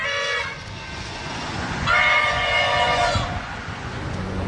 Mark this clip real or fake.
fake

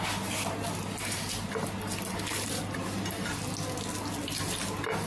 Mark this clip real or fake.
real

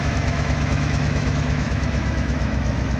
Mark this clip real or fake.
fake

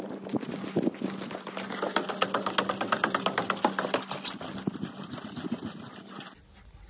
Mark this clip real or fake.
real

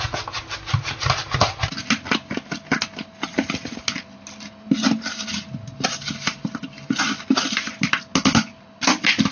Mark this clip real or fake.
real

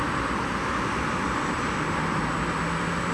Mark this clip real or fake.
real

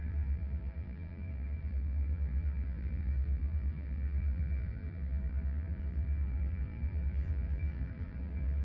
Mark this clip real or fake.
fake